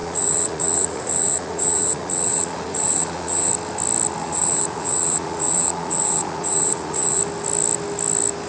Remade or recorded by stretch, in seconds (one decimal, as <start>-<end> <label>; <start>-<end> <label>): 0.0-3.5 remade; 3.5-4.2 recorded; 4.2-7.2 remade; 7.2-8.5 recorded

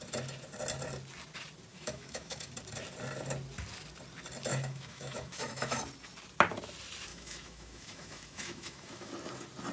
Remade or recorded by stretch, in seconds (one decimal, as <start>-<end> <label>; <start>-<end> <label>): 0.0-1.7 recorded; 1.7-2.5 remade; 2.5-4.5 recorded; 4.5-5.8 remade; 5.8-7.1 recorded; 7.1-9.1 remade; 9.1-9.7 recorded

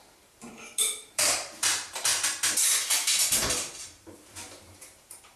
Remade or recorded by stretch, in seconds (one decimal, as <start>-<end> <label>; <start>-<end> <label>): 0.0-2.1 remade; 2.1-3.3 recorded; 3.3-5.4 remade